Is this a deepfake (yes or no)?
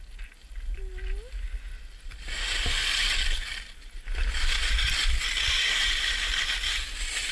no